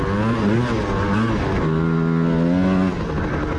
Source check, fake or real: real